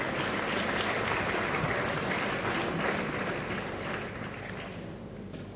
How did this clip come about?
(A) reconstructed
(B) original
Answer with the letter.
B